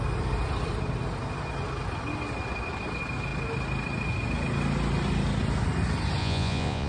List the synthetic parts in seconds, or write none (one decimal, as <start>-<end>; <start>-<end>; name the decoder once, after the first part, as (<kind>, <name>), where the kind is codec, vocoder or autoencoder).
6.2-6.9 (vocoder, Vocos)